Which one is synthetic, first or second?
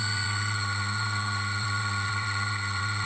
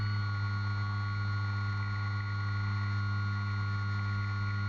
first